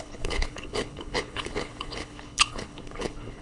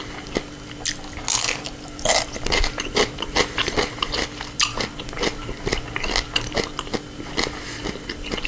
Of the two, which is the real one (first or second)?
second